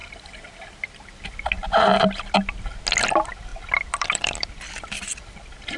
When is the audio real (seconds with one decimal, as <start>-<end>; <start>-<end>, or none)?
0.0-3.0